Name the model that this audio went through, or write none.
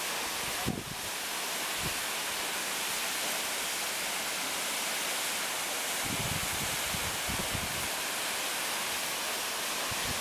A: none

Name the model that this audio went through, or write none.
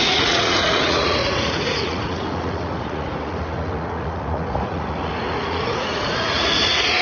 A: vocoder, Vocos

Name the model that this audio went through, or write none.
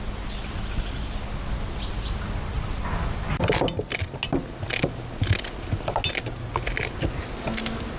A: none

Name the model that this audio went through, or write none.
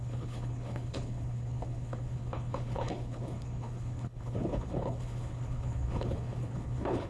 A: codec, HILCodec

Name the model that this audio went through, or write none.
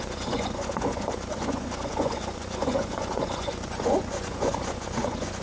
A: vocoder, Vocos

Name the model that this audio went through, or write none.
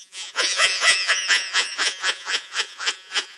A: vocoder, Vocos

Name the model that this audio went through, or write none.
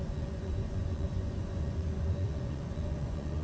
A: vocoder, Vocos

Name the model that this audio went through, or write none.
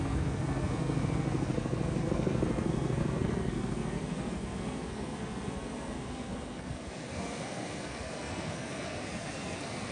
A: codec, SNAC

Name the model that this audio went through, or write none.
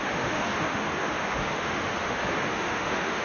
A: autoencoder, DAC-VAE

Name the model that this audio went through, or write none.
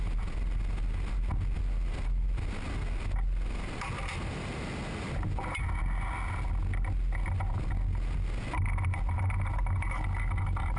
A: none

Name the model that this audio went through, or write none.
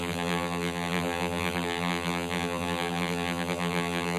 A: vocoder, BigVGAN v2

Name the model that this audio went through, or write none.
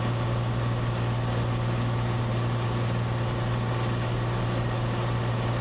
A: none